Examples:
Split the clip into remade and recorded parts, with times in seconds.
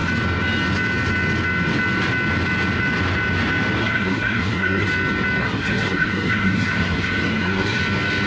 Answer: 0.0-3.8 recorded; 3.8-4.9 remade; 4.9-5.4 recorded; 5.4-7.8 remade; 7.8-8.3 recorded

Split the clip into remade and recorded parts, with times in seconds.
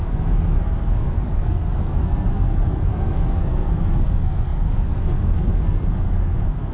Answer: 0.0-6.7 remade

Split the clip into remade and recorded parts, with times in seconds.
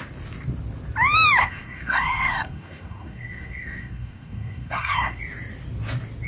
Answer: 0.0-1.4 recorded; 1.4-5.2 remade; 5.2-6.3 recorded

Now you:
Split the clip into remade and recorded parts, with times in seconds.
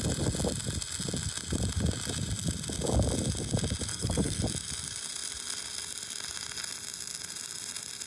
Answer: 0.0-3.9 recorded; 3.9-4.4 remade; 4.4-8.1 recorded